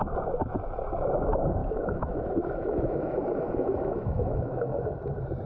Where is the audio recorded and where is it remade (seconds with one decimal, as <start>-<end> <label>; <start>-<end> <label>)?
0.0-1.6 recorded; 1.6-4.9 remade; 4.9-5.5 recorded